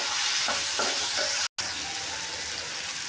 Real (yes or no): yes